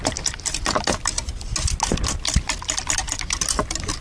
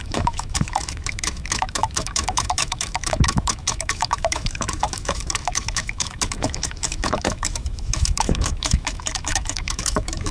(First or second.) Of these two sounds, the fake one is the second